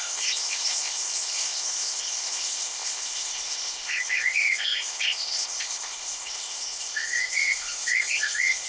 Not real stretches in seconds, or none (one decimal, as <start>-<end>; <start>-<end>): 0.0-8.7